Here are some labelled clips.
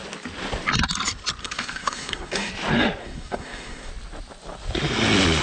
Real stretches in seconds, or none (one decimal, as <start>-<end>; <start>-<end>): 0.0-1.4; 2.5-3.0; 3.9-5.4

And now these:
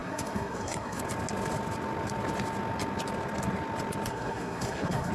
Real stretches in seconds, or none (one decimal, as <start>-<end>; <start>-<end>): 1.0-4.1

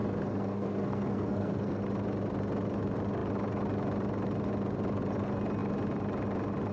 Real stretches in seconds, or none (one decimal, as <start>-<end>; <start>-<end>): 1.8-6.7

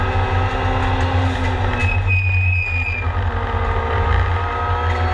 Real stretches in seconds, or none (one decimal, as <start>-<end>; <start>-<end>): 0.0-5.1